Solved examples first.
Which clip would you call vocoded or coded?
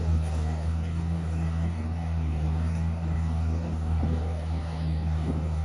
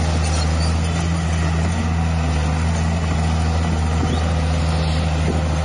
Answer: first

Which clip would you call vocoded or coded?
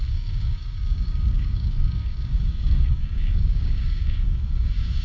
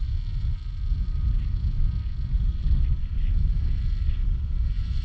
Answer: first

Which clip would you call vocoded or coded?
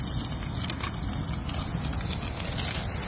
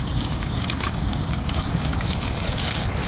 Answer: second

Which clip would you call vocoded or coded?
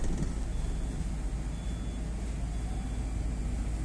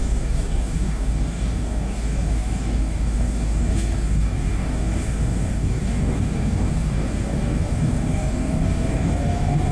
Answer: second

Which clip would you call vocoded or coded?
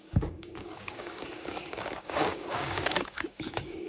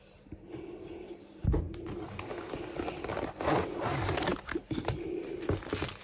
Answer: first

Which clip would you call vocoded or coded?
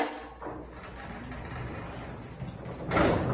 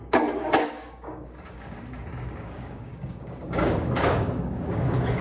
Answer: second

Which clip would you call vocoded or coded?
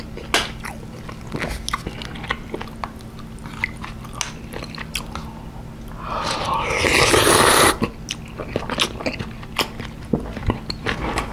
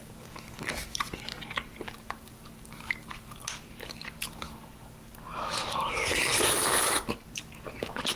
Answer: second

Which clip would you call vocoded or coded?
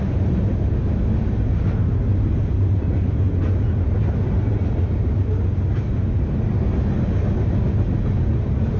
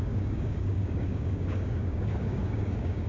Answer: second